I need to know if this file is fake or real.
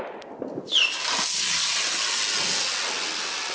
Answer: real